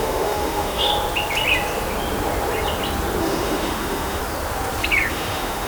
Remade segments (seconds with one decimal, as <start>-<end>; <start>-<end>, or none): 0.0-0.9; 3.2-4.2; 5.1-5.7